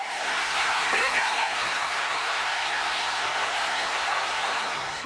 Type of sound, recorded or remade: remade